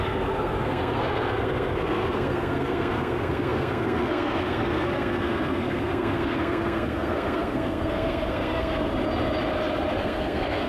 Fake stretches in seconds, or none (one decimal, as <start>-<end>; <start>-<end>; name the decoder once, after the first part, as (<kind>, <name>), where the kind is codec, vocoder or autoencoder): 0.0-8.9 (codec, SNAC); 10.0-10.7